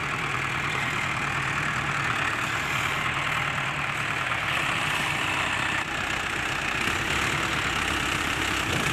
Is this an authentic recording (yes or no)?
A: yes